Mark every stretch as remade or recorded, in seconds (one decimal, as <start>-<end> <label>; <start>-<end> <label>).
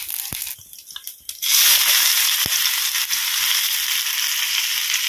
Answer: 0.0-5.1 recorded